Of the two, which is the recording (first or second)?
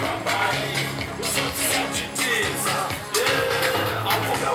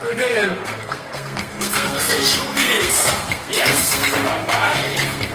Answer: first